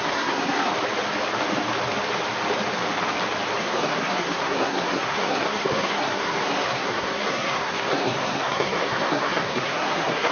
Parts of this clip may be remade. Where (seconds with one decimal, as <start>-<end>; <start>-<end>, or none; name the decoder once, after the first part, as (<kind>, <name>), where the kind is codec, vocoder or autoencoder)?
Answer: 0.0-0.7 (codec, SNAC); 3.6-10.3